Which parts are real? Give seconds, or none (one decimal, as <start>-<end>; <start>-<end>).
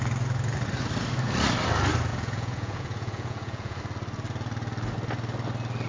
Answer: 0.0-2.1; 3.8-5.9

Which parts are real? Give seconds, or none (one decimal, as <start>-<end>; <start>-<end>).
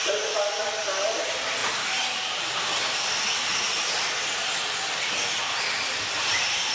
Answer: 0.0-6.7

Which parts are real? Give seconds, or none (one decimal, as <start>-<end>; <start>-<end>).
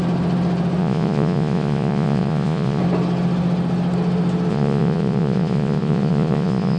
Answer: 0.0-0.8; 2.8-4.5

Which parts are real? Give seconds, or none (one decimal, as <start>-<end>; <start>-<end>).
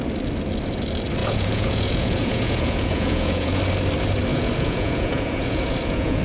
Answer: 0.0-1.2; 3.6-4.3